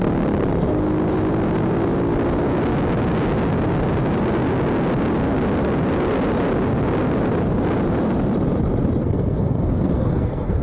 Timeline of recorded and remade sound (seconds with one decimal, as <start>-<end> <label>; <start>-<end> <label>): 0.0-9.0 recorded; 9.0-10.6 remade